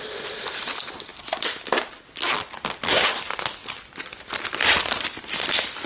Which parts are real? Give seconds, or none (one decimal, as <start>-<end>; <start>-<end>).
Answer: 0.0-5.9